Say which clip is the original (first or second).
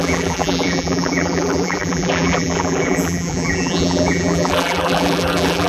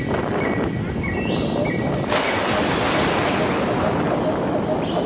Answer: second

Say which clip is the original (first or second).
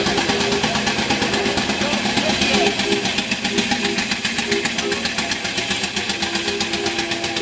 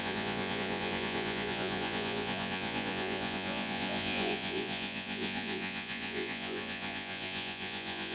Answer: first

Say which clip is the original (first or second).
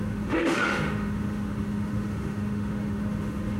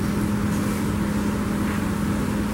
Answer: second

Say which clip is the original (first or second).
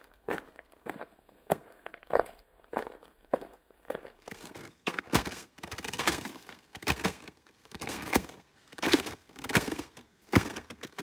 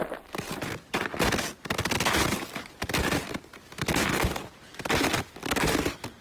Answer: second